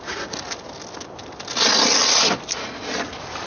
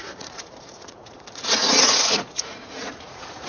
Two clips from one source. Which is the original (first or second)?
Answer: first